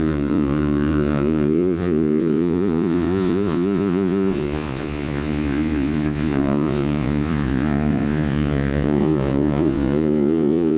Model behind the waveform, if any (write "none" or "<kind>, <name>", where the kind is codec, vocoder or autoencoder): vocoder, Vocos